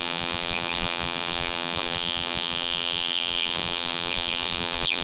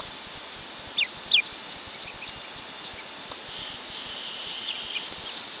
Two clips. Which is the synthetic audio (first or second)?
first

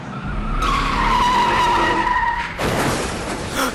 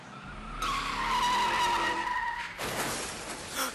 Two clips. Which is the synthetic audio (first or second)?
first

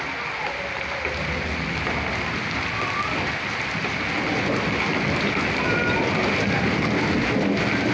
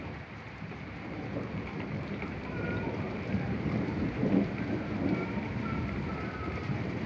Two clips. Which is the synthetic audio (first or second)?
second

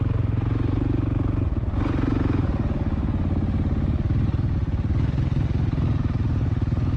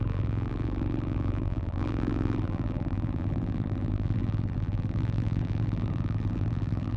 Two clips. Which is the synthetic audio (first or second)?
second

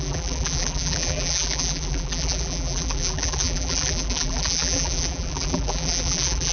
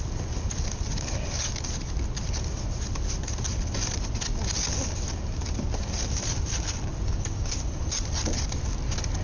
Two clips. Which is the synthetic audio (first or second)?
first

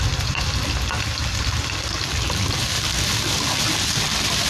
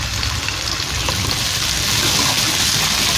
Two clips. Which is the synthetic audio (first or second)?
first